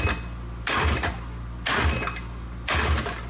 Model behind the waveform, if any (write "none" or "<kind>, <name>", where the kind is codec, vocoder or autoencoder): none